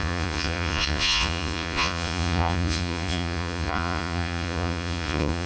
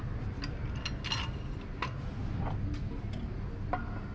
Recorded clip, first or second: second